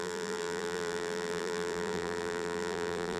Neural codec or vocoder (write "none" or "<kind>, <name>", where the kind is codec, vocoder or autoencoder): vocoder, BigVGAN v2